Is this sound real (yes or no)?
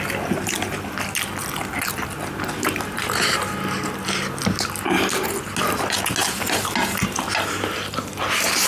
yes